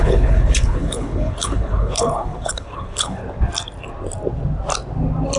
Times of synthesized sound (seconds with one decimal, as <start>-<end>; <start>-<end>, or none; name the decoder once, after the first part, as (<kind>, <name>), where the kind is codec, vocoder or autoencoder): 0.0-3.2 (codec, HILCodec)